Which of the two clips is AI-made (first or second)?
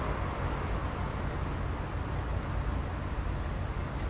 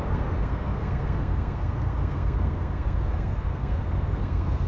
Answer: second